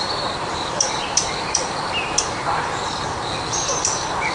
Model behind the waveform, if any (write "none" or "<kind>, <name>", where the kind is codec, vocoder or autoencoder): vocoder, BigVGAN v2